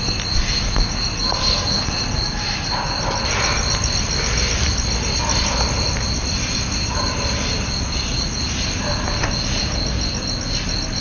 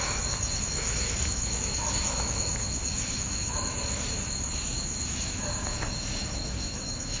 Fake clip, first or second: second